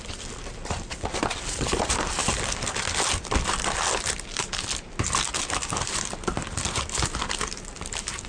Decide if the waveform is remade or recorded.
recorded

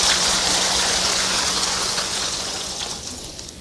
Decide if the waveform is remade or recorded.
remade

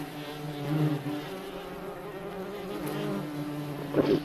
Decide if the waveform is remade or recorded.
recorded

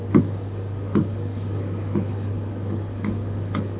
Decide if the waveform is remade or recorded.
remade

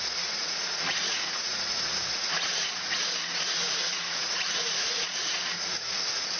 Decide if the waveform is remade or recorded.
remade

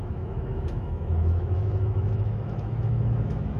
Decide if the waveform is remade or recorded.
remade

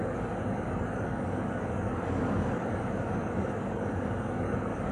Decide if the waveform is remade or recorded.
remade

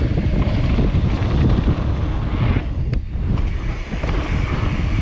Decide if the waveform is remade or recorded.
recorded